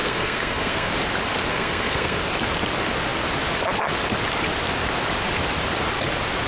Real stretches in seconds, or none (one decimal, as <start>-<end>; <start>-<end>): 0.9-1.5; 2.2-6.5